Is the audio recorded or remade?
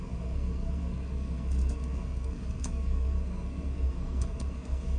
remade